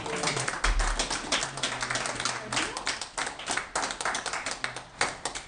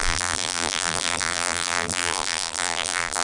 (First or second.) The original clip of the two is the first